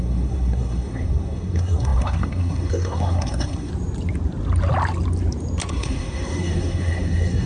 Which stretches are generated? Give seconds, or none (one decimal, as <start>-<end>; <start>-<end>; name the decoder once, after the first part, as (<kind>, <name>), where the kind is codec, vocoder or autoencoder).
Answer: 0.0-3.7 (codec, SNAC); 5.7-7.5